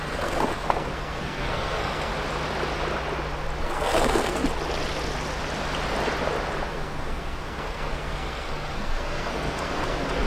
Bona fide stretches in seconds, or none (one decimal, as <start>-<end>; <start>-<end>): 2.1-3.6; 4.4-6.7